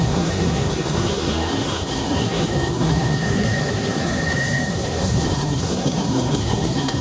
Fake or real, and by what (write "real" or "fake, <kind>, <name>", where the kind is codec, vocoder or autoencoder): fake, codec, SNAC